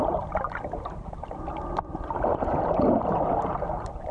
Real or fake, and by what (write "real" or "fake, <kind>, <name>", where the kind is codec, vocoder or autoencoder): real